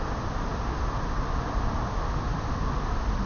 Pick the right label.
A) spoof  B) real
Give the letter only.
B